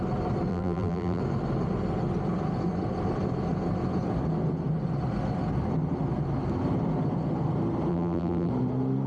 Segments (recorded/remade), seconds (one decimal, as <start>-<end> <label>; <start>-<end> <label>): 0.0-0.5 recorded; 0.5-1.2 remade; 1.2-7.9 recorded; 7.9-8.5 remade; 8.5-9.1 recorded